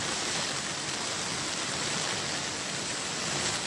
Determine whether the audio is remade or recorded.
recorded